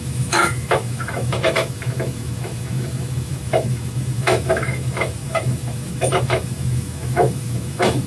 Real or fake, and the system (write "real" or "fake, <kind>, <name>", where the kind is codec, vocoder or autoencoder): fake, autoencoder, DAC-VAE